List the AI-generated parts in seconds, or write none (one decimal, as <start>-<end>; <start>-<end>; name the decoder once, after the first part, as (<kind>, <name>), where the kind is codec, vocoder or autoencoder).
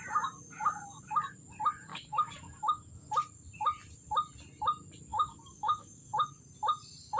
1.9-2.9 (codec, DAC); 5.1-6.4